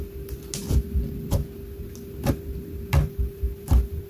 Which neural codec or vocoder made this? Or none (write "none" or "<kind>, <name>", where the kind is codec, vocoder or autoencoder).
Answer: none